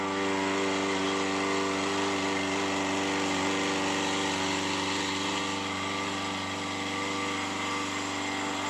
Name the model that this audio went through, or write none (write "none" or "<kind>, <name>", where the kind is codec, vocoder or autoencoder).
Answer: none